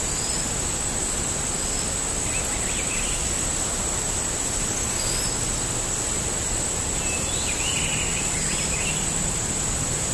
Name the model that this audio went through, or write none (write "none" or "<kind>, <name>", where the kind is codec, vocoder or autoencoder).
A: none